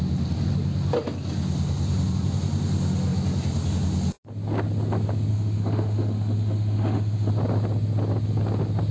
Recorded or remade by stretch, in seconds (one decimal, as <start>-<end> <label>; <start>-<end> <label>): 0.0-5.3 recorded; 5.3-7.3 remade; 7.3-8.9 recorded